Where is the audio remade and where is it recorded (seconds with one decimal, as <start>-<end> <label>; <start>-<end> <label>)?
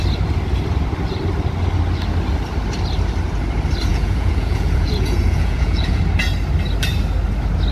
0.0-3.9 recorded; 3.9-6.0 remade; 6.0-7.7 recorded